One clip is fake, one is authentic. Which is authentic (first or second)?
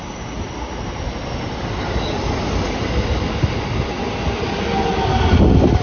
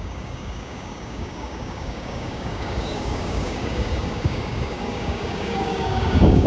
first